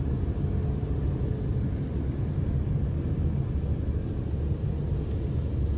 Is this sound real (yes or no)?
yes